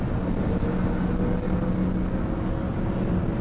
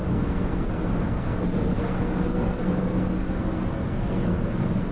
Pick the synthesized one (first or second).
second